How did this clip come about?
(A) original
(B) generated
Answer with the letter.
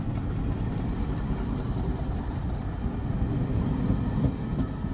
A